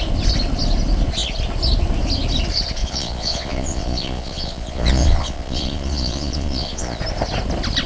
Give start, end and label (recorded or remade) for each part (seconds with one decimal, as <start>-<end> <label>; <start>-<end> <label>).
0.0-2.8 recorded; 2.8-7.0 remade; 7.0-7.9 recorded